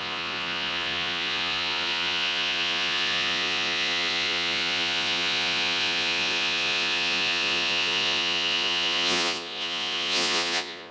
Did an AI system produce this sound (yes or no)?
yes